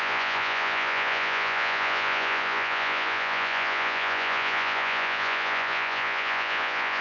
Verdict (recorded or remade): remade